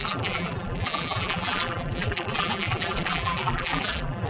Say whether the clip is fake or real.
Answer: fake